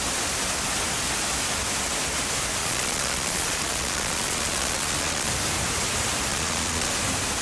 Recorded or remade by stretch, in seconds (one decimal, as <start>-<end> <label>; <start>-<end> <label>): 0.0-2.6 recorded; 2.6-5.3 remade; 5.3-6.3 recorded; 6.3-6.9 remade; 6.9-7.4 recorded